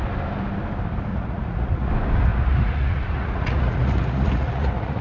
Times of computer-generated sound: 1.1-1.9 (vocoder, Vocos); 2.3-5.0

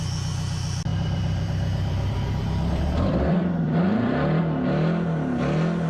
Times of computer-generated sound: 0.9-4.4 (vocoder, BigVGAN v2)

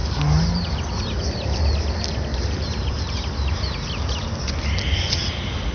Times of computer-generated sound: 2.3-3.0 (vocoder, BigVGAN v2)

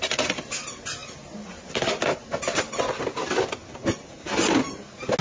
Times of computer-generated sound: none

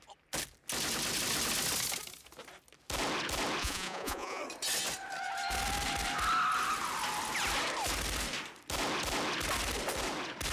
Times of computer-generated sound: 3.6-4.4 (vocoder, Vocos)

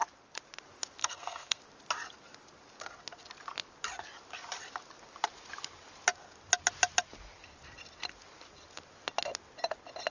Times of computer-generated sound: 1.0-1.6 (codec, SNAC)